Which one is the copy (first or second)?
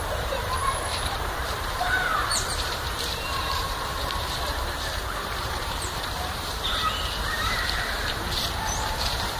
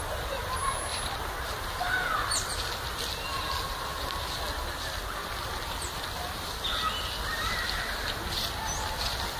first